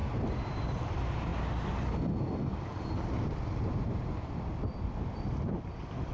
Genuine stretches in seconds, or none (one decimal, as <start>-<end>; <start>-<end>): 0.7-6.1